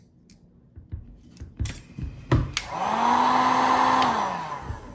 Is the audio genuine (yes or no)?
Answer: yes